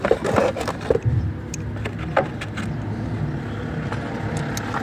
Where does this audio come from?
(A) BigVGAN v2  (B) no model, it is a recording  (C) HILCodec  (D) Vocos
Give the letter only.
B